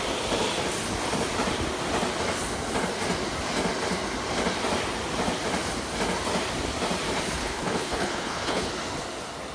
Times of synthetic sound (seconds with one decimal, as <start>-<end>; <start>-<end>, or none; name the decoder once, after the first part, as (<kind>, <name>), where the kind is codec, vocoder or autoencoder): 7.4-8.7 (codec, HILCodec)